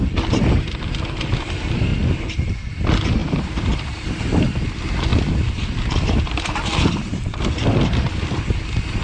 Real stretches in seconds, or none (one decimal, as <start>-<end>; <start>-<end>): 0.0-3.2; 4.2-5.1; 6.6-9.0